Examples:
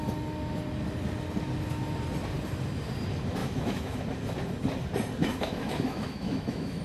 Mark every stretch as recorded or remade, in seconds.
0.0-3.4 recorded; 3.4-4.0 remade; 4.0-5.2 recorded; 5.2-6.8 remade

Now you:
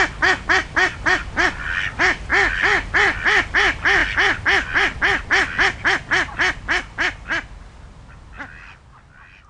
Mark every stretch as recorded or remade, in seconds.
0.0-9.5 recorded

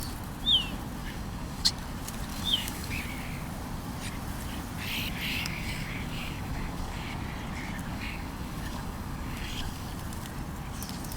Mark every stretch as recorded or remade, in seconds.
0.0-1.0 recorded; 1.0-1.7 remade; 1.7-2.3 recorded; 2.3-3.0 remade; 3.0-5.3 recorded; 5.3-7.2 remade; 7.2-7.9 recorded; 7.9-9.9 remade; 9.9-11.2 recorded

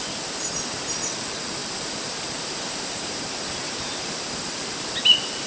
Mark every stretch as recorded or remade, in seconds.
0.0-1.6 recorded; 1.6-4.9 remade; 4.9-5.5 recorded

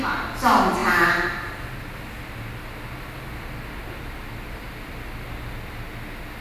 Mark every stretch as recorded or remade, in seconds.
0.0-6.4 recorded

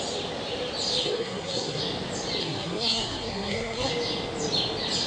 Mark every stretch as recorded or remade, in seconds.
0.0-1.0 recorded; 1.0-1.8 remade; 1.8-2.4 recorded; 2.4-3.9 remade; 3.9-5.1 recorded

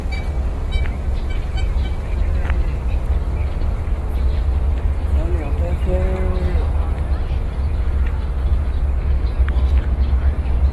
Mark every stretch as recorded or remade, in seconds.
0.0-10.7 recorded

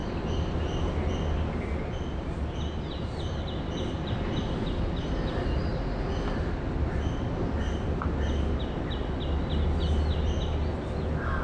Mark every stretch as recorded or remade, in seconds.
0.0-11.4 recorded